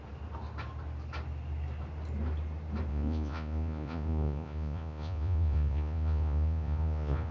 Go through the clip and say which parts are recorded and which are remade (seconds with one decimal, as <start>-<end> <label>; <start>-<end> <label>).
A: 0.0-2.9 recorded; 2.9-7.3 remade